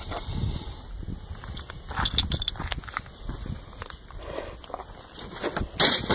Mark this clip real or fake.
real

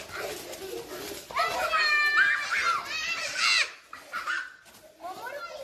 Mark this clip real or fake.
real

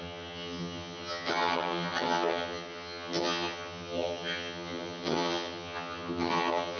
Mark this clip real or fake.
fake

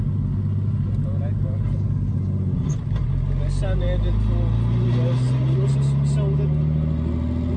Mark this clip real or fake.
real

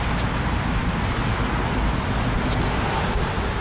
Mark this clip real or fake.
real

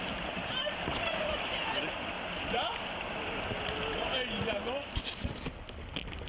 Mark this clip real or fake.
real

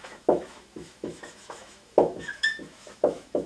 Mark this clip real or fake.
fake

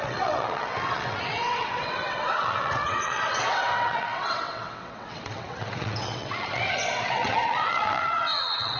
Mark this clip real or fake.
fake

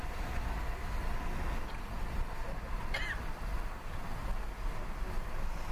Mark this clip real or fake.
real